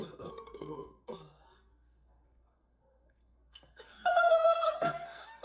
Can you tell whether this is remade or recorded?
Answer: remade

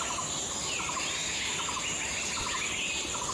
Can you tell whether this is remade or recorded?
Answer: recorded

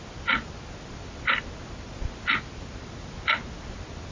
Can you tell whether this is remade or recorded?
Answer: recorded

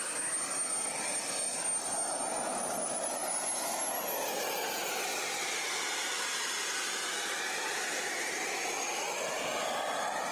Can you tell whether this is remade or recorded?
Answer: recorded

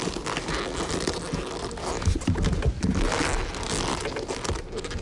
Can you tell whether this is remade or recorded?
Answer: recorded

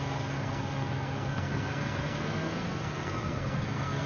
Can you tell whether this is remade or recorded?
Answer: remade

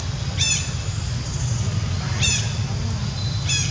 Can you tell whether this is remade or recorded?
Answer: recorded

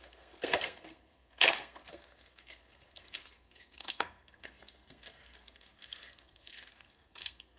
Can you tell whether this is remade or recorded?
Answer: remade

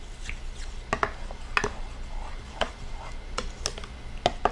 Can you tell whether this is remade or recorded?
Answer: recorded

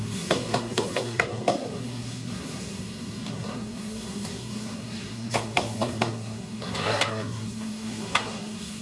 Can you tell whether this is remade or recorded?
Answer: remade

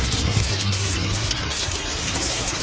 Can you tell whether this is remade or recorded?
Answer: remade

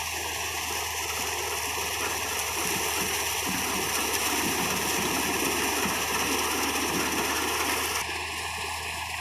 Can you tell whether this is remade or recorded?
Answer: recorded